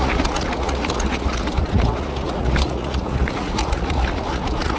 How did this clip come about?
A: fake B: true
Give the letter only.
A